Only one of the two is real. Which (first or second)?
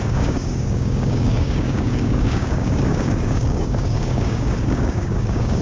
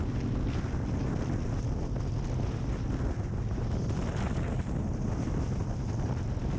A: second